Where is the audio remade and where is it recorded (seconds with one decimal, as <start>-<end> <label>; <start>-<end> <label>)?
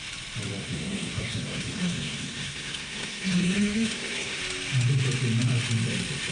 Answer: 0.0-0.6 recorded; 0.6-4.4 remade; 4.4-6.3 recorded